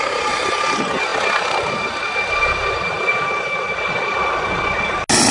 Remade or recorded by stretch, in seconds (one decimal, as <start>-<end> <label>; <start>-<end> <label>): 0.0-5.3 recorded